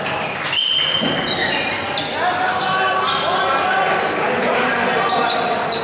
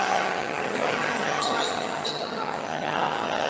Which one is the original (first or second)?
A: first